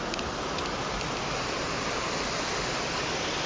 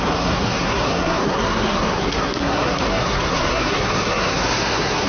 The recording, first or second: first